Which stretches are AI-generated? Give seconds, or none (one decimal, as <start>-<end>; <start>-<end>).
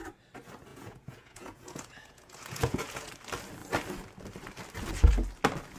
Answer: 0.7-3.1